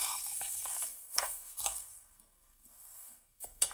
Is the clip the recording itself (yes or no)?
no